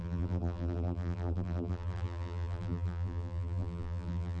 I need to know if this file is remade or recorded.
remade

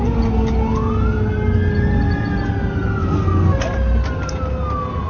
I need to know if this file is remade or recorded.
recorded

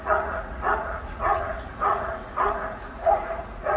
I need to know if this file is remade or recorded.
remade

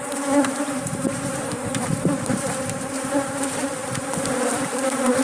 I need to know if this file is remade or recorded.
remade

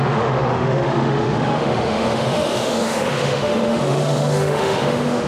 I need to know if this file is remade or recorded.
remade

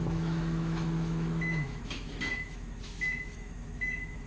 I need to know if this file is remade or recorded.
remade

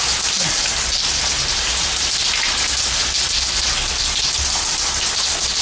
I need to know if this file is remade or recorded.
recorded